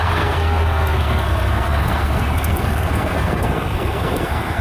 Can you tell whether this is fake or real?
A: fake